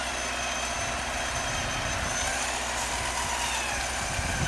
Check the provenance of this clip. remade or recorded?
recorded